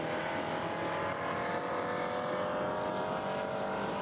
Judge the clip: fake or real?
real